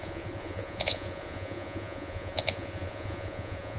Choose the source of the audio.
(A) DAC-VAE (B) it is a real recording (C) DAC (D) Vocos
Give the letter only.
D